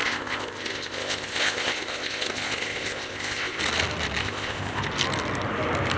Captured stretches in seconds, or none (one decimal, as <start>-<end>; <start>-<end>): 3.6-4.2; 4.8-6.0

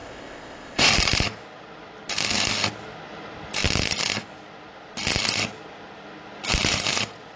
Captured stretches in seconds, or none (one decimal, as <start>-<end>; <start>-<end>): 0.9-7.4

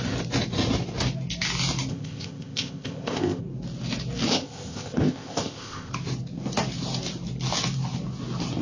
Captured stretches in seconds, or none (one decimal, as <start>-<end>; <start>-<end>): 0.0-1.9; 3.4-4.3; 5.9-8.6

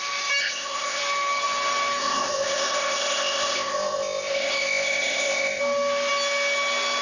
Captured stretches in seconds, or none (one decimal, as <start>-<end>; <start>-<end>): 0.0-0.4; 1.0-2.0; 5.6-7.0

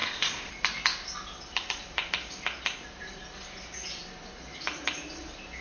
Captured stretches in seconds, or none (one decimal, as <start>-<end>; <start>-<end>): 0.5-5.6

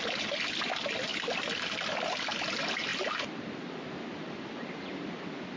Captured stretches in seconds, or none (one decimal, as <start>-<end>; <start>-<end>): 0.0-5.6

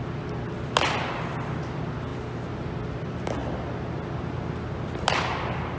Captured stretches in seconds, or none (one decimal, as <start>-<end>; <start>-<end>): 0.0-5.8

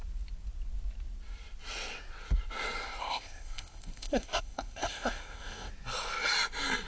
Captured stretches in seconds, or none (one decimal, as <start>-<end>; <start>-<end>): 0.0-3.0; 5.7-6.9